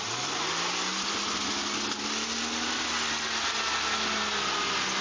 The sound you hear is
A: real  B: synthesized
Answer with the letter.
A